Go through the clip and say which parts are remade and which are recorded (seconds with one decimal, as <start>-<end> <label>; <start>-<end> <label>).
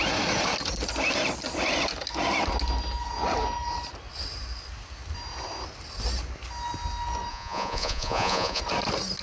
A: 0.0-7.3 recorded; 7.3-8.6 remade; 8.6-9.2 recorded